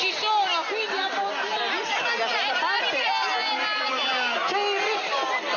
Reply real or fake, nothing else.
real